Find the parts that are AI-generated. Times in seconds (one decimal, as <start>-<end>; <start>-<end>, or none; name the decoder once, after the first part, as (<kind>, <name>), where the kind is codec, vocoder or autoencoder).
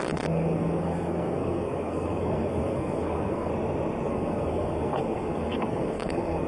0.0-3.5 (codec, SNAC); 4.1-6.5